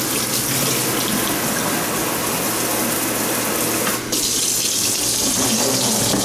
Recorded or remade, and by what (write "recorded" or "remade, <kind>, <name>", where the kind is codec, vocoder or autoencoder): recorded